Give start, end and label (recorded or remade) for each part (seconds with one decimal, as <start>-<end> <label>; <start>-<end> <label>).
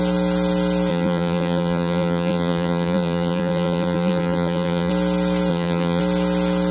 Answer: 0.0-0.9 recorded; 0.9-4.9 remade; 4.9-5.5 recorded; 5.5-6.0 remade; 6.0-6.7 recorded